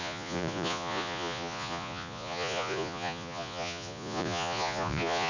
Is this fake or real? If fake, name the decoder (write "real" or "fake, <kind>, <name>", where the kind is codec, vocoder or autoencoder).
fake, vocoder, Vocos